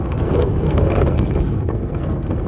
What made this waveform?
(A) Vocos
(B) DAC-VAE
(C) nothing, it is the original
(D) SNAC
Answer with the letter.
D